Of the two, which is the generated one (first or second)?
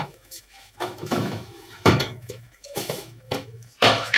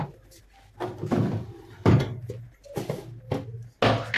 first